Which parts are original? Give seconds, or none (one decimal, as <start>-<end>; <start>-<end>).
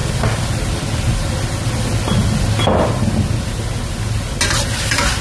0.0-5.2